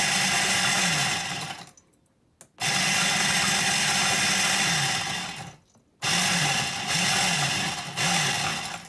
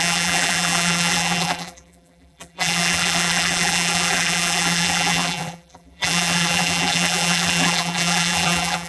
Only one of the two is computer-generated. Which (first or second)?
second